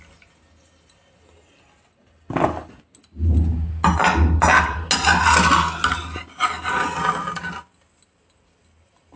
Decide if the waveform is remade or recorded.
recorded